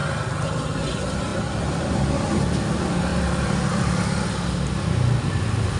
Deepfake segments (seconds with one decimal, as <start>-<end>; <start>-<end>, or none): none